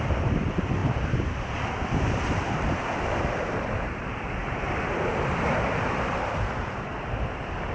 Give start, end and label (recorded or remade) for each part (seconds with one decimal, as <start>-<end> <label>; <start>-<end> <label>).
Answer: 0.0-7.7 remade